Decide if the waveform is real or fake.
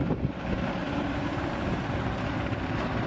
fake